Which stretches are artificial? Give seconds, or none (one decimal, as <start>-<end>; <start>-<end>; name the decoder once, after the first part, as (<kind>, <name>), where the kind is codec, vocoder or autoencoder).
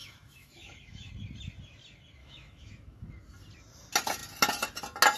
0.0-1.1 (autoencoder, DAC-VAE); 2.2-3.1